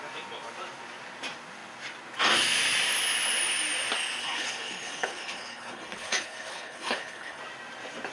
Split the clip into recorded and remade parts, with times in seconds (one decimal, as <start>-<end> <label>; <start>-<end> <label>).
0.0-4.2 recorded; 4.2-7.4 remade; 7.4-8.1 recorded